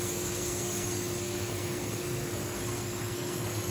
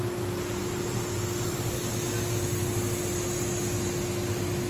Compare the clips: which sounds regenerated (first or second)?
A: first